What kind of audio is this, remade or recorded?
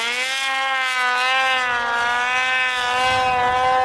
recorded